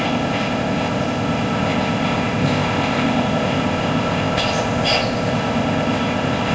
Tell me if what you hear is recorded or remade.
remade